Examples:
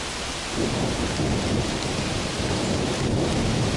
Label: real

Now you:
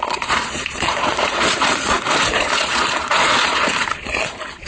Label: fake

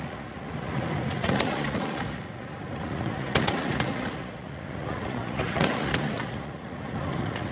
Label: fake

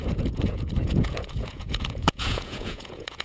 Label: fake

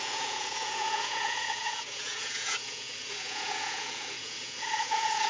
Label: fake